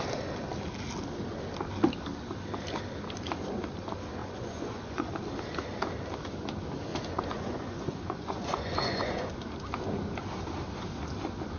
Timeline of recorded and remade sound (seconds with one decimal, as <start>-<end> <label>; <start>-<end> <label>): 0.0-4.2 recorded; 4.2-5.1 remade; 5.1-6.9 recorded; 6.9-9.3 remade; 9.3-11.6 recorded